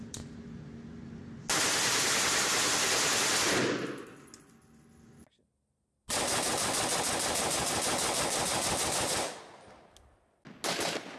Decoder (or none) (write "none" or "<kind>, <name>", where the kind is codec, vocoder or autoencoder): none